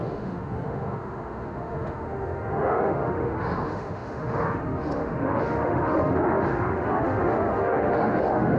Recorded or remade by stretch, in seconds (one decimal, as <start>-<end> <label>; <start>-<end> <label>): 0.0-8.6 remade